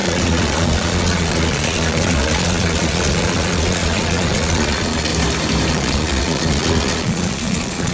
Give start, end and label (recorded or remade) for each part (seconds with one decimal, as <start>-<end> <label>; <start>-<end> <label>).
0.0-5.1 remade; 5.1-5.7 recorded; 5.7-7.9 remade